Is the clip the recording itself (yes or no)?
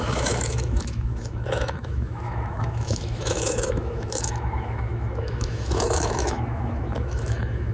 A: no